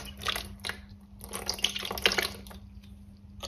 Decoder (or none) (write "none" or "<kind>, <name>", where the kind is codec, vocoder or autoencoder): none